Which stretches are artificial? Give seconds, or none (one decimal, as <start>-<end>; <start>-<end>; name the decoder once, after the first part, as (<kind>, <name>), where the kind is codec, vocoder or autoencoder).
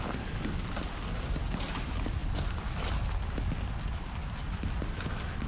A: none